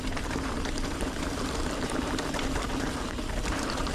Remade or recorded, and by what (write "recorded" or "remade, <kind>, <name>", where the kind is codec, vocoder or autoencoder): remade, vocoder, BigVGAN v2